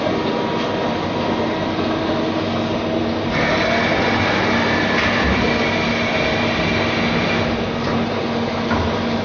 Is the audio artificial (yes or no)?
no